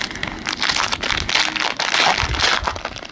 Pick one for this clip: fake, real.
real